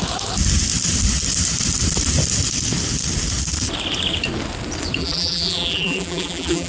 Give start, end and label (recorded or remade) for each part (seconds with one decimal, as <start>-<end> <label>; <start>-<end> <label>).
0.0-5.0 recorded; 5.0-6.7 remade